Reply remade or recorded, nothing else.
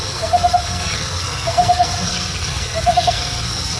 remade